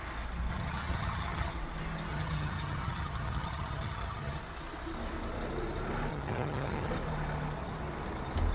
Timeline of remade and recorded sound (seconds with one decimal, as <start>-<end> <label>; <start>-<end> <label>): 0.0-0.5 recorded; 0.5-1.5 remade; 1.5-2.1 recorded; 2.1-4.4 remade; 4.4-6.1 recorded; 6.1-6.9 remade; 6.9-8.5 recorded